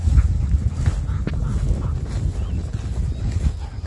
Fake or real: real